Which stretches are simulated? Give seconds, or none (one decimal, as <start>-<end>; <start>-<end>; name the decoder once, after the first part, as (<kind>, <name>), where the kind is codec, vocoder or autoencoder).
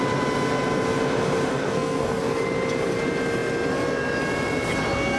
1.5-2.2 (codec, SNAC)